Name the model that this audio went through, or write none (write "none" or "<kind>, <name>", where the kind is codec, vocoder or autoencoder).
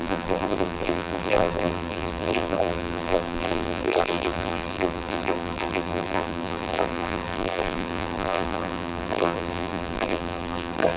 vocoder, BigVGAN v2